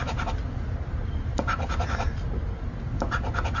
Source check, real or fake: real